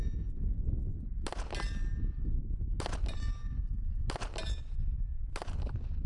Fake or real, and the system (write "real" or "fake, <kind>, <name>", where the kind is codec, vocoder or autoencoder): real